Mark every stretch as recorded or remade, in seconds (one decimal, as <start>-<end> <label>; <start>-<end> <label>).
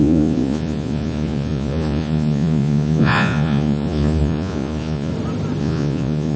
0.0-5.1 remade; 5.1-5.6 recorded; 5.6-6.4 remade